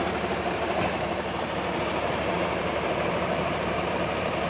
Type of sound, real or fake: fake